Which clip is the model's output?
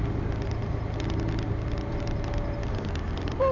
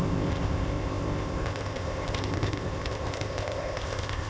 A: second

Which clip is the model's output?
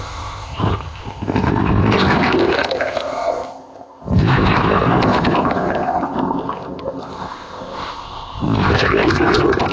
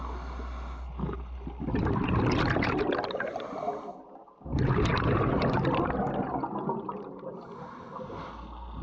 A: first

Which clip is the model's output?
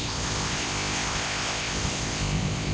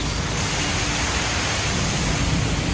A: first